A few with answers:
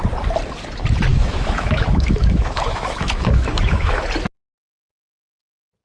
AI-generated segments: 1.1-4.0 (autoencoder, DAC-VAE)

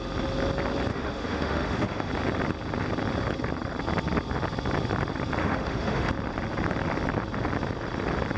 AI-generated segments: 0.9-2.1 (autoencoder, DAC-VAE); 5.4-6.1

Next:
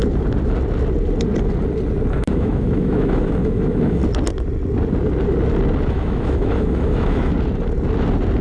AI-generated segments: 2.1-4.0 (autoencoder, DAC-VAE); 5.9-7.3

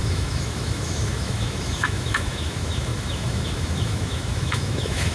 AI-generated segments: 0.0-5.1 (autoencoder, DAC-VAE)

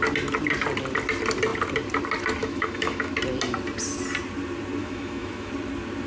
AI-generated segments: 2.4-3.1 (autoencoder, DAC-VAE); 4.8-5.5